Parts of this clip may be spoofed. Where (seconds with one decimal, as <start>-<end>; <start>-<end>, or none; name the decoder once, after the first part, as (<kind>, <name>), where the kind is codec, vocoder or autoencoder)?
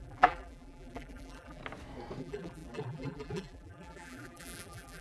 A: 0.0-1.6 (vocoder, BigVGAN v2); 2.2-5.0